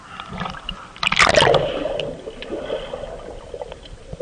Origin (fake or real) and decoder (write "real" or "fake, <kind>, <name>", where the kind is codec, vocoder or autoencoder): real